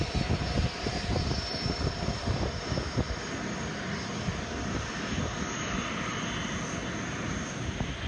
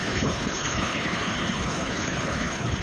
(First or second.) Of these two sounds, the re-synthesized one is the second